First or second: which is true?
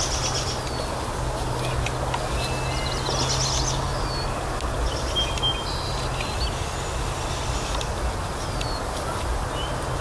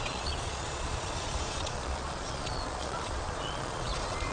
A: first